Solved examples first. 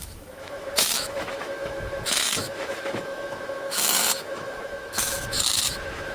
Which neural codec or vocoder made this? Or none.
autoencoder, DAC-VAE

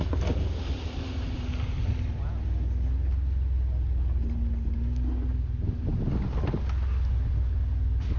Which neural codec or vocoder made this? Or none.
none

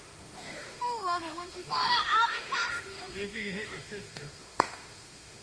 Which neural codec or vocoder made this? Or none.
autoencoder, DAC-VAE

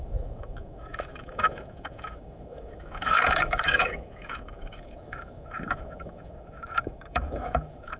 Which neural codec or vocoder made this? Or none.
autoencoder, DAC-VAE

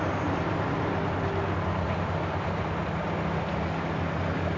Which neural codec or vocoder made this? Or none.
none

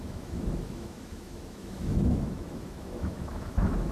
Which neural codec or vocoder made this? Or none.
autoencoder, DAC-VAE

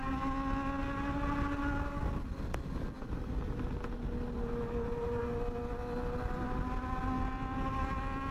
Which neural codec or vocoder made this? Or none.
none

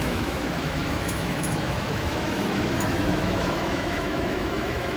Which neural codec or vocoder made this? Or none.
autoencoder, DAC-VAE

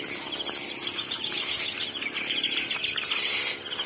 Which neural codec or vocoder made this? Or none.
none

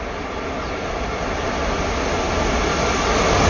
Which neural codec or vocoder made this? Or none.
none